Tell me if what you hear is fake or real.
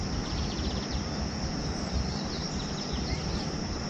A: fake